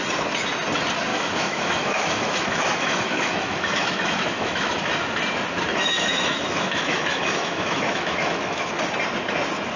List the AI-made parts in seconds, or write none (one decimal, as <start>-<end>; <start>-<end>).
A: 1.1-4.9; 5.7-8.7